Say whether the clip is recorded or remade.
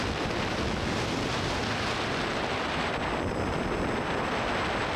remade